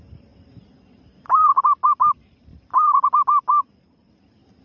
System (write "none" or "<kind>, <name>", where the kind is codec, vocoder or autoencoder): none